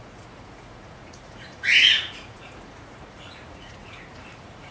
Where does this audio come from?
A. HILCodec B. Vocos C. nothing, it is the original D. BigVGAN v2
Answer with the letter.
B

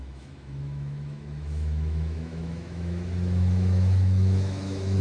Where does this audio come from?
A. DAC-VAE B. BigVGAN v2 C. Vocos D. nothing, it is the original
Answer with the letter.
A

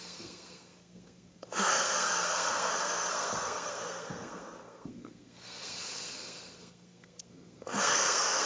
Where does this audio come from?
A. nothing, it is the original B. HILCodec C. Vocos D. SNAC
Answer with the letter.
D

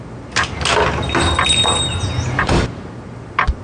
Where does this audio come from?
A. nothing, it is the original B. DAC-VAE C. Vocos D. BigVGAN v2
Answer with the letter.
A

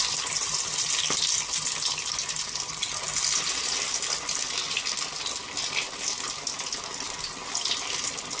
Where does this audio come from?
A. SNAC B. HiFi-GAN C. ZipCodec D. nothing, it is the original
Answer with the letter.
D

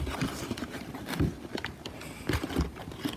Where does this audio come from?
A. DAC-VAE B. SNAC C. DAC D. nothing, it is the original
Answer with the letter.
D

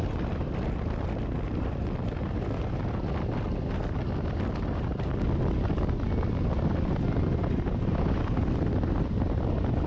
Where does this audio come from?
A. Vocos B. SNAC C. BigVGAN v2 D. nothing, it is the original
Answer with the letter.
D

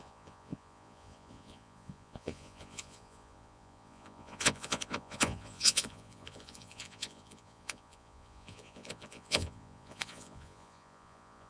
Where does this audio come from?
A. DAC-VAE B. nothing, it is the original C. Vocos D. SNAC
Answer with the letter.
C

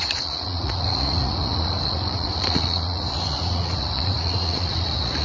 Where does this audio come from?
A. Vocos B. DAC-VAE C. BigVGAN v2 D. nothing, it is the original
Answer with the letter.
A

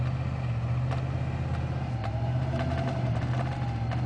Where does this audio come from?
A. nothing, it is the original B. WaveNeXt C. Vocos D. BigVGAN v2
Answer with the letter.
A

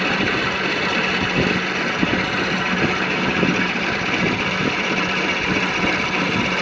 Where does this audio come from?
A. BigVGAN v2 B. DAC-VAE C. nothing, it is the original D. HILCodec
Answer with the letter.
C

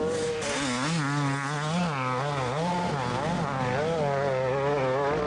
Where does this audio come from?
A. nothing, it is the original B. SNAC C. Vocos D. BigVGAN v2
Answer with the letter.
A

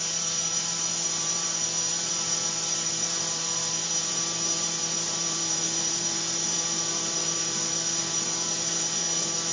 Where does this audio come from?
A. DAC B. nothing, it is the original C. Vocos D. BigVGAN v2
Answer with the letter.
D